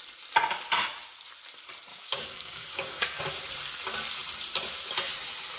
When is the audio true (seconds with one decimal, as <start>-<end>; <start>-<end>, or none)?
0.0-1.9; 3.2-5.6